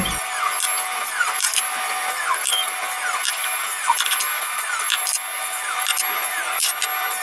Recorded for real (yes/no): yes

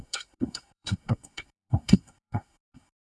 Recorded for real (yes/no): no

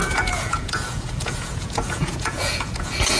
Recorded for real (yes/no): no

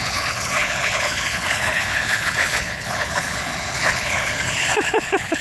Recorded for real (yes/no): no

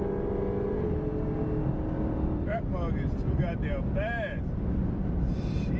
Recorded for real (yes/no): yes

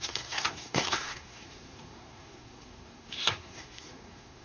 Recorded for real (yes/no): no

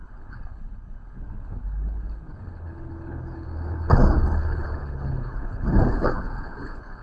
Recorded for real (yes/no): no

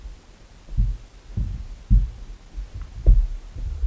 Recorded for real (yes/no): yes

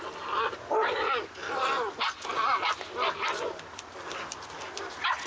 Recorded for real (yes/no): yes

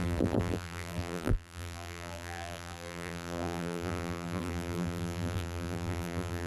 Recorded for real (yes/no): no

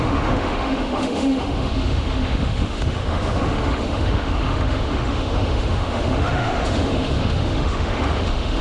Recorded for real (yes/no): no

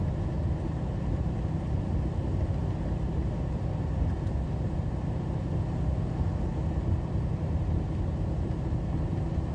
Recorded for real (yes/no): yes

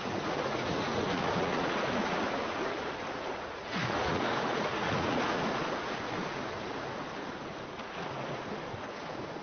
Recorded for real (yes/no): no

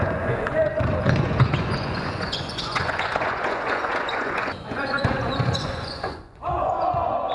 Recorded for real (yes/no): no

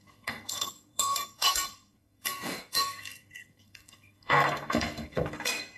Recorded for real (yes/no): no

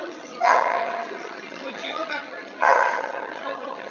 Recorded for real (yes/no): no